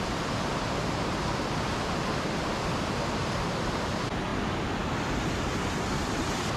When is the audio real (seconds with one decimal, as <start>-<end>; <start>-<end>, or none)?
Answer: 0.0-3.2; 3.9-6.6